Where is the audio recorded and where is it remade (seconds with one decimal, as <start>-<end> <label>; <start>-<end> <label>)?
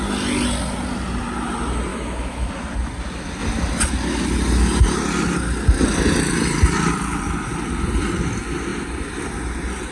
0.0-1.9 recorded; 1.9-2.5 remade; 2.5-9.9 recorded